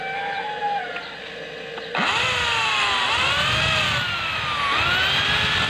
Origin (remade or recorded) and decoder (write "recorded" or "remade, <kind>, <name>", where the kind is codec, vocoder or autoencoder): recorded